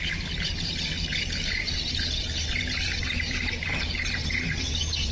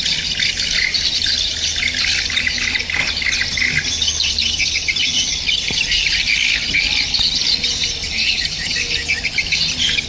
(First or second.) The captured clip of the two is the second